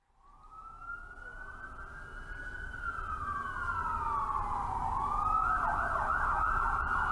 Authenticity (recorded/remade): recorded